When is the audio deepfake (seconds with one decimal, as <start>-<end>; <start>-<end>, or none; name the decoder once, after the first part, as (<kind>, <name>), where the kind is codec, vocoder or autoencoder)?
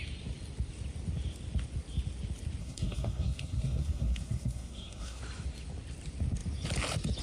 2.6-5.2 (codec, SNAC)